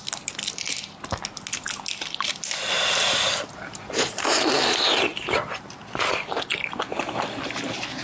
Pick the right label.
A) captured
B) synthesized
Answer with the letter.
A